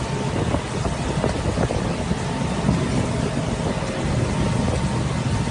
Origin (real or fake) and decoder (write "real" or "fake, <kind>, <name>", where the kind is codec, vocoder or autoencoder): real